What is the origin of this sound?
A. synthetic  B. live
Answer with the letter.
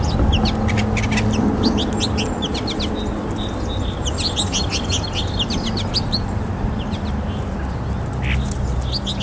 B